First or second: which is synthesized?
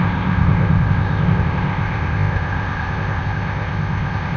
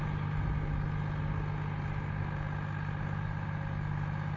first